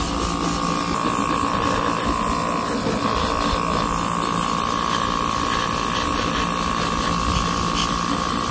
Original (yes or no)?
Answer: yes